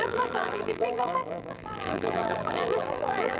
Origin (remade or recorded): remade